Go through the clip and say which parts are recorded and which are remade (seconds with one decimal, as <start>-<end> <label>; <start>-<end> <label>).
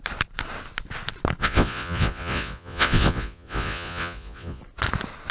0.0-1.4 recorded; 1.4-4.6 remade; 4.6-5.3 recorded